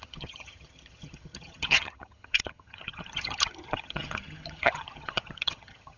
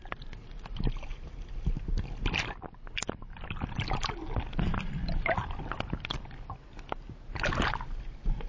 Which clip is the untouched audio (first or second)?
second